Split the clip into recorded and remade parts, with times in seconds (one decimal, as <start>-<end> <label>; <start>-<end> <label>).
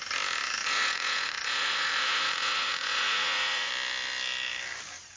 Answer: 0.0-0.6 recorded; 0.6-3.7 remade; 3.7-5.2 recorded